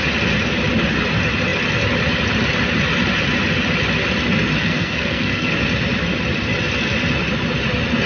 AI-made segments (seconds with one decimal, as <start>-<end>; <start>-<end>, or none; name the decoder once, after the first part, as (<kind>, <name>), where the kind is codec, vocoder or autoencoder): 4.6-5.5 (codec, SNAC)